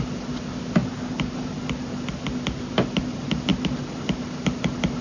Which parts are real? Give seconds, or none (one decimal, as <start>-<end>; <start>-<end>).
0.0-5.0